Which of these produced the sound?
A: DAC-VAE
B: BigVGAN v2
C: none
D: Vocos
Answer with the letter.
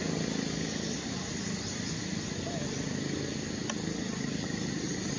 C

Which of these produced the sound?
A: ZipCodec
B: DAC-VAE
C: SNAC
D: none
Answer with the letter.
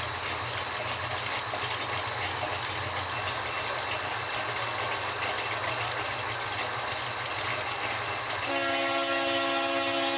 D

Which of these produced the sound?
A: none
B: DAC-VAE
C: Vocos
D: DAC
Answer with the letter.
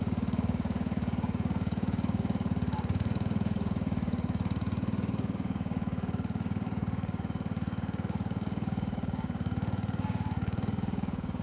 D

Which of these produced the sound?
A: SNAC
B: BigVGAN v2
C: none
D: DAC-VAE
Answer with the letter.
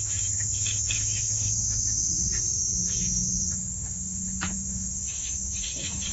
D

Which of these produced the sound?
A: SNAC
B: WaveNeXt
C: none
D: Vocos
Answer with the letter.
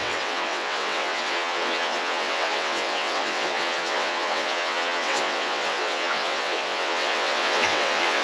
B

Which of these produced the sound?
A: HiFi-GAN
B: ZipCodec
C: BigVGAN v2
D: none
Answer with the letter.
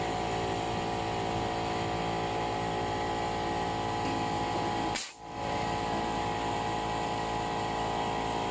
D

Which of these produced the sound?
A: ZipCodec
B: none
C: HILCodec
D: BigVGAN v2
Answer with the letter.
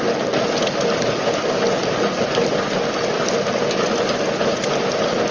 B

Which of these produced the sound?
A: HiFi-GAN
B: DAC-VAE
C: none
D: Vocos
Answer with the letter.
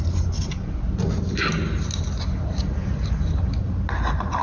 C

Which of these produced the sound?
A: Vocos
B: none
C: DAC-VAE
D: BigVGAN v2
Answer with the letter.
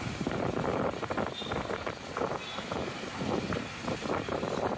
B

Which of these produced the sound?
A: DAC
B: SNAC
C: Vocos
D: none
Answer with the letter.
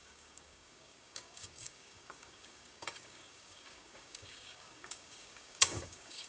A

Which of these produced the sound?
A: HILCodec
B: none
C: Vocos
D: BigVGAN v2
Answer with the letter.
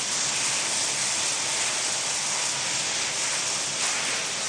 B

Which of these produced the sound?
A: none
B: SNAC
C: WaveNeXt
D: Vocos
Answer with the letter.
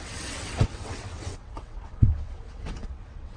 C